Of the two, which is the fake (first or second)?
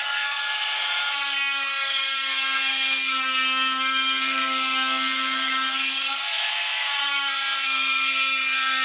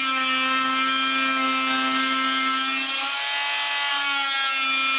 first